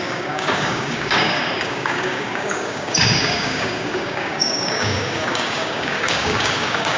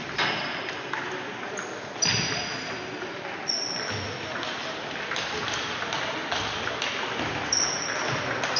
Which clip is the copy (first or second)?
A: first